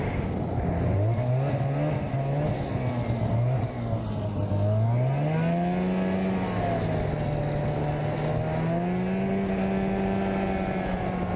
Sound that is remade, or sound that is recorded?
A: recorded